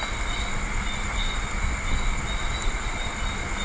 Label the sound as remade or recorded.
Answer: recorded